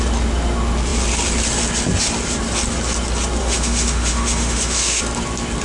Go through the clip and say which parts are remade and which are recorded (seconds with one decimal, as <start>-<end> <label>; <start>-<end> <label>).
0.0-3.4 recorded; 3.4-5.0 remade; 5.0-5.6 recorded